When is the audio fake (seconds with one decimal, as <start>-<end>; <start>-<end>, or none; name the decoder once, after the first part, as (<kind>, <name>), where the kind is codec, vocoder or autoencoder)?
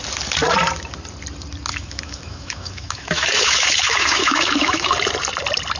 1.7-4.9 (autoencoder, DAC-VAE)